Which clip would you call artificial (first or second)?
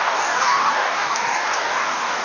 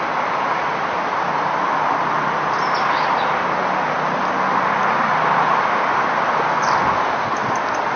first